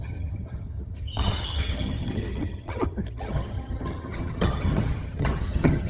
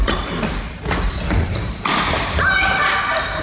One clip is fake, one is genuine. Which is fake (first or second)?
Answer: first